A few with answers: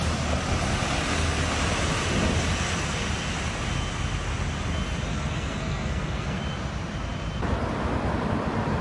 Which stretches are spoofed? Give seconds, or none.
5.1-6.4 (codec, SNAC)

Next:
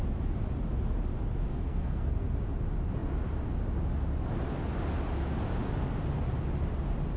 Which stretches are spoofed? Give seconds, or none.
1.5-2.4 (codec, SNAC)

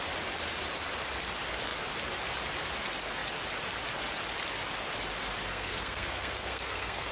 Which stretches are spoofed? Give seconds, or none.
5.5-7.1 (codec, SNAC)

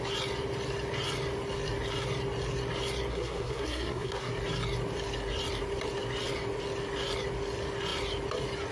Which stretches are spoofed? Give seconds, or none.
3.1-4.3 (codec, SNAC)

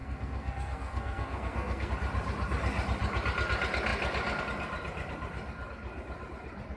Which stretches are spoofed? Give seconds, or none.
0.0-1.9 (codec, SNAC)

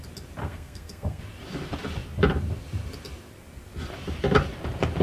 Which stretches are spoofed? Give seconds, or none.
0.4-1.2 (codec, SNAC)